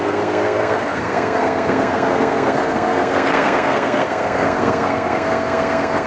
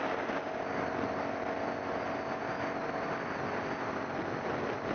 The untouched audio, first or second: second